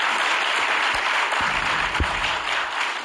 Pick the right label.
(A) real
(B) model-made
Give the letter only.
B